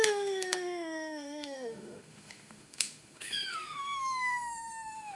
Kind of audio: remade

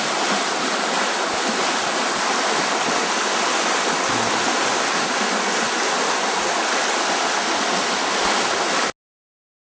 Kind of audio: recorded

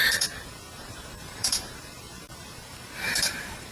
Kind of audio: remade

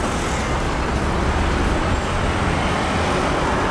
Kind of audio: recorded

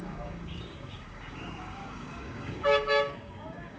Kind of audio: remade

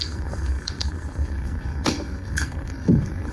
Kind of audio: remade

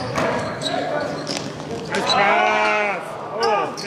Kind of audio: remade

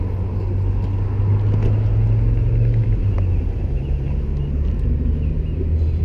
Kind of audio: recorded